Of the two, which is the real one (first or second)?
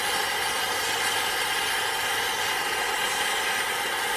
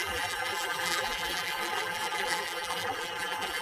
first